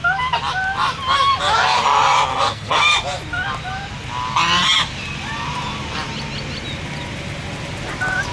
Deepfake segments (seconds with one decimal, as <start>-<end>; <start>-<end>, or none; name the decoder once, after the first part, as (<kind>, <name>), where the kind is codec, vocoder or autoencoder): 2.3-2.8 (codec, SNAC)